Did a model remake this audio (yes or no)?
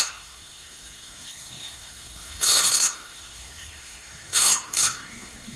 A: yes